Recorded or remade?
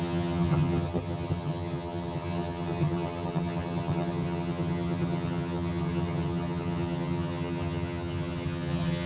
remade